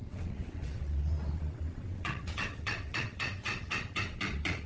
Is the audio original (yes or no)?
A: no